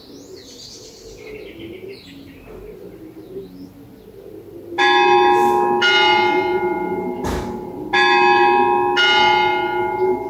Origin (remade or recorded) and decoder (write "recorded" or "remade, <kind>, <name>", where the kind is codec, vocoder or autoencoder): recorded